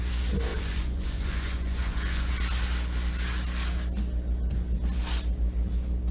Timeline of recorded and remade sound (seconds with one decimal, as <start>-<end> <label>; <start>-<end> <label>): 0.0-0.5 recorded; 0.5-2.3 remade; 2.3-6.1 recorded